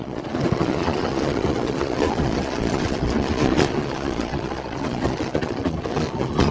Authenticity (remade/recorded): remade